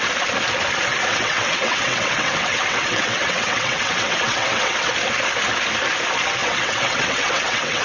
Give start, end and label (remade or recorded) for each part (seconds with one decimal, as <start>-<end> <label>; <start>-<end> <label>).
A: 0.0-1.1 recorded; 1.1-4.9 remade; 4.9-6.4 recorded; 6.4-7.8 remade